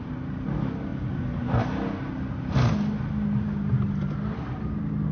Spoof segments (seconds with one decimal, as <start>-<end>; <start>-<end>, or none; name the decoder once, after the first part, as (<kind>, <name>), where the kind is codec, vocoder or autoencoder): none